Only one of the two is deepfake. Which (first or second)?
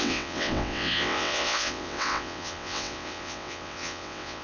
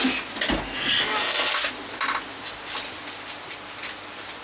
first